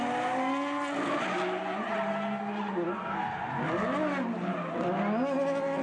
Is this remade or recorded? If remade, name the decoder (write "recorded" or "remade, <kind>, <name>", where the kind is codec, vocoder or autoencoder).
recorded